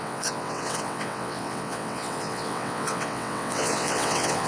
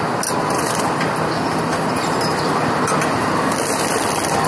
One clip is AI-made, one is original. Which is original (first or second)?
second